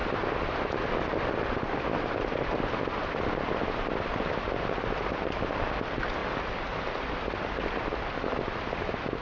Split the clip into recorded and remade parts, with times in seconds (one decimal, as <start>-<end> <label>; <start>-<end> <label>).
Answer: 0.0-9.2 recorded